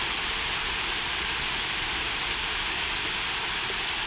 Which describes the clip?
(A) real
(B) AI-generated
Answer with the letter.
A